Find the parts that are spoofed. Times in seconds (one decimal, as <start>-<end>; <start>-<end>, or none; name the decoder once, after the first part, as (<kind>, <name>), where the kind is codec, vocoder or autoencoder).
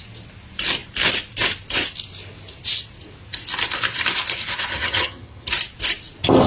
4.7-5.5 (vocoder, HiFi-GAN)